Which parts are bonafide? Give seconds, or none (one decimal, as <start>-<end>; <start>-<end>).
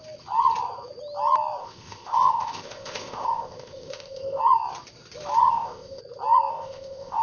0.0-1.6; 4.4-5.4; 6.0-6.5